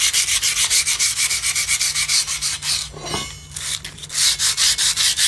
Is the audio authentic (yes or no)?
yes